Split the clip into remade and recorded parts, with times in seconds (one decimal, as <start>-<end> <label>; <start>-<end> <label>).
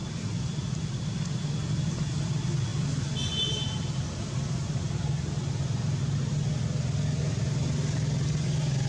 0.0-8.9 recorded